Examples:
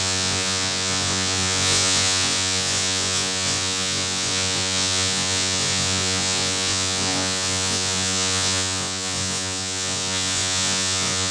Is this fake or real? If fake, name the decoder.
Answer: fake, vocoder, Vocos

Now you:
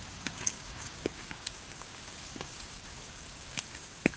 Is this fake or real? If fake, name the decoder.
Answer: fake, codec, DAC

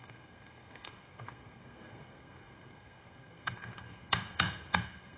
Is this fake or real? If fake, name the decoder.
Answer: fake, codec, SNAC